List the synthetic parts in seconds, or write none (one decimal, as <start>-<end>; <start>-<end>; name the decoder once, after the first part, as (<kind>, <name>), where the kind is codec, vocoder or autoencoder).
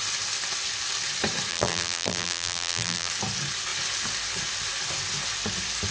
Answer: 1.5-3.1 (vocoder, BigVGAN v2)